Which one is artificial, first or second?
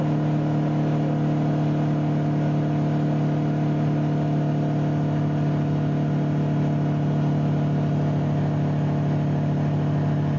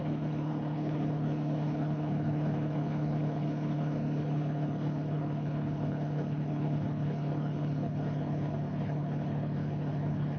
second